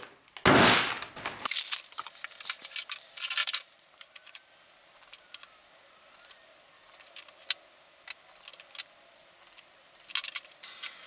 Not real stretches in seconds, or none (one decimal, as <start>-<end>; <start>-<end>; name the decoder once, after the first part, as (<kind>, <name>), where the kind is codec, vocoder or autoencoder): 3.4-4.5 (vocoder, BigVGAN v2)